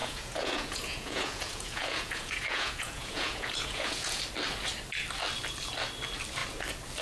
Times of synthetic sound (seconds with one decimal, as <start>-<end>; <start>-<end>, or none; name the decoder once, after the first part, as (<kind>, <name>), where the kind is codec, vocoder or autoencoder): 0.0-4.2 (vocoder, Vocos)